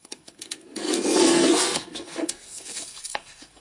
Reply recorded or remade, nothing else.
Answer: remade